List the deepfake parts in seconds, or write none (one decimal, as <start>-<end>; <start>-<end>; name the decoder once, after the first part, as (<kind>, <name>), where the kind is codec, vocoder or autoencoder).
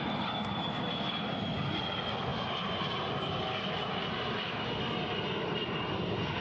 none